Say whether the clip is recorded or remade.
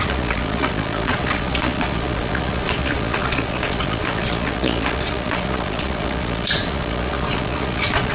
remade